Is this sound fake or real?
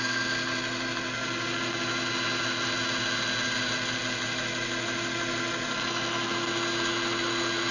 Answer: real